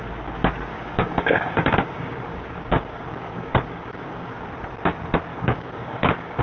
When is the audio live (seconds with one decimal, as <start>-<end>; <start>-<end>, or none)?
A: 0.0-0.7; 4.4-5.3